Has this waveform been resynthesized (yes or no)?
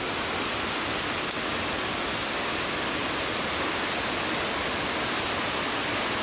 no